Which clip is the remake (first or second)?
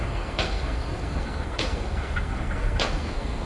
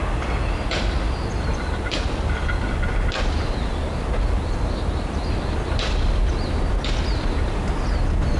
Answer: first